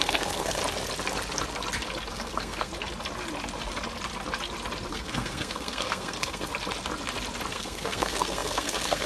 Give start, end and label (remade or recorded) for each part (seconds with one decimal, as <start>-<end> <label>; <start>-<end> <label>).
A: 0.0-0.6 remade; 0.6-2.1 recorded; 2.1-2.7 remade; 2.7-4.9 recorded; 4.9-6.5 remade; 6.5-7.5 recorded; 7.5-9.1 remade